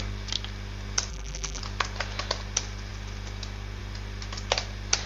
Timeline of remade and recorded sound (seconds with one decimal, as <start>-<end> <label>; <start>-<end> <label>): 0.0-1.1 recorded; 1.1-1.6 remade; 1.6-5.1 recorded